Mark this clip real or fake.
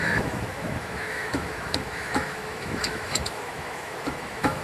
fake